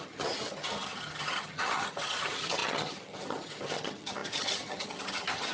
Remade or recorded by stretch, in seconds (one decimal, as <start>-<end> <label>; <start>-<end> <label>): 0.0-5.5 remade